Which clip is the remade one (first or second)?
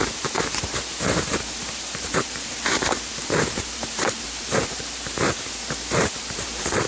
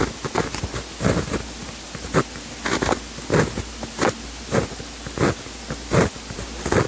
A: first